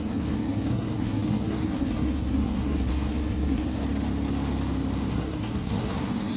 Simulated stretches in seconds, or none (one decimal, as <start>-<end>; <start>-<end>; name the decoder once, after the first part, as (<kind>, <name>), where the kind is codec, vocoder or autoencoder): 0.0-3.8 (codec, SNAC); 5.1-6.4

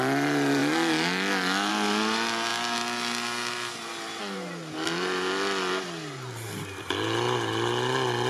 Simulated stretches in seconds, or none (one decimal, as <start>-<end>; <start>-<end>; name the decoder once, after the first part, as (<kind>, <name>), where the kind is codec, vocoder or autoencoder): none

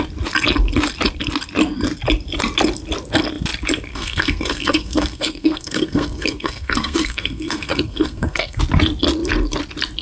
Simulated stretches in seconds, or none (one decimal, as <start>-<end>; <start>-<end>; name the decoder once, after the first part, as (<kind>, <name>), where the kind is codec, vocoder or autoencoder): 3.9-8.6 (codec, SNAC)

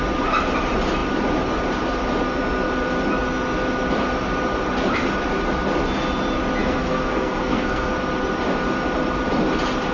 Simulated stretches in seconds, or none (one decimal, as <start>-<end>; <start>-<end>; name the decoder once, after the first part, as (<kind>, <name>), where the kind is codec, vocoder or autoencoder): 6.6-7.9 (codec, SNAC)

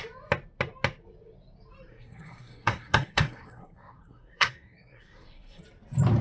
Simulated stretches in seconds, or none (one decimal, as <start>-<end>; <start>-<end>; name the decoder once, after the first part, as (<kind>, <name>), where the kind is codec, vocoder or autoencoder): 1.9-5.6 (codec, SNAC)

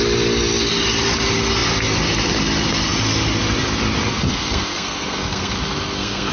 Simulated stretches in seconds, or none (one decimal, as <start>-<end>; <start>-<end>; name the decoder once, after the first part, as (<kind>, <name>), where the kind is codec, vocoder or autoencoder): 4.1-6.3 (codec, SNAC)

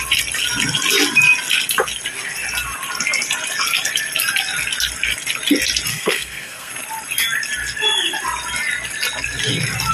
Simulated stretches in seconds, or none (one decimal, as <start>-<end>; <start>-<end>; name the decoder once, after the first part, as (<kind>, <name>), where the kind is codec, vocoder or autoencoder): 5.9-6.7 (codec, SNAC)

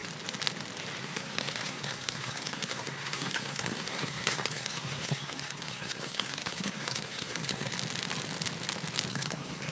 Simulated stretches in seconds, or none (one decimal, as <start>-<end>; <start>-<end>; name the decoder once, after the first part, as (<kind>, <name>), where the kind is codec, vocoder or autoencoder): 1.0-7.7 (codec, SNAC); 9.1-9.7